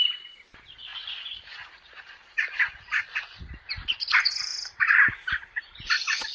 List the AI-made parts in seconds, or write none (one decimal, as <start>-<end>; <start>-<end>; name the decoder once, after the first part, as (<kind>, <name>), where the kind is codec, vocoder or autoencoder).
none